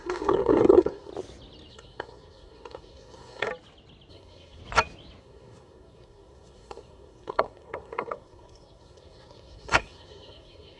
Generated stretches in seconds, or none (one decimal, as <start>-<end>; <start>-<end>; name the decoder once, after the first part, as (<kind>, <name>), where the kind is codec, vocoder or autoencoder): 0.0-1.1 (codec, SNAC); 1.7-3.5; 4.1-4.6; 5.2-10.8